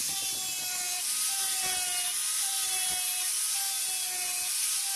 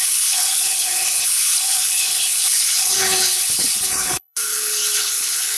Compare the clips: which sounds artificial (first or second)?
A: second